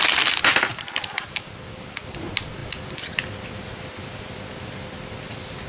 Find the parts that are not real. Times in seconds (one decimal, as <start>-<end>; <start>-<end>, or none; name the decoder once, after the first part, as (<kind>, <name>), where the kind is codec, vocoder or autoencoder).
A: none